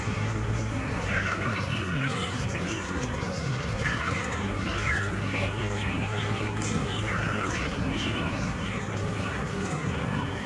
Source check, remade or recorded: remade